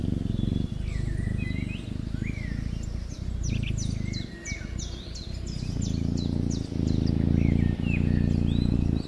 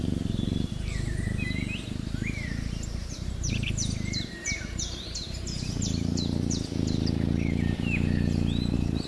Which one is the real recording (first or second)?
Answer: first